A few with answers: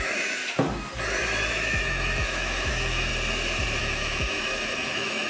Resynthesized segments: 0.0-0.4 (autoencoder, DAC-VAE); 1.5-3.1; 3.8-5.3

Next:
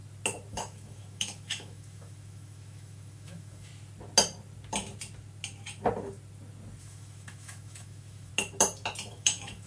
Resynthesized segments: 0.5-3.7 (autoencoder, DAC-VAE); 6.8-8.3; 9.1-9.7

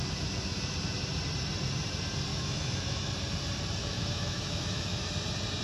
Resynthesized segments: 2.3-3.1 (autoencoder, DAC-VAE); 3.8-5.1

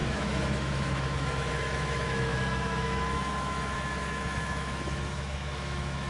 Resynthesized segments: 0.0-6.1 (autoencoder, DAC-VAE)

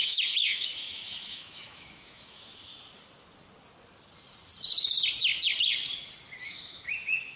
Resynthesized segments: 0.0-2.7 (autoencoder, DAC-VAE); 6.4-7.4

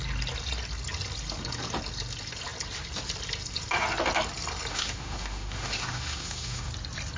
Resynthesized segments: 4.7-6.7 (autoencoder, DAC-VAE)